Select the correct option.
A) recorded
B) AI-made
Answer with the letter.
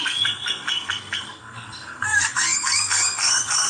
B